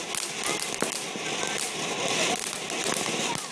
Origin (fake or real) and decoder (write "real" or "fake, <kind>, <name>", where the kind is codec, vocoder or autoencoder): real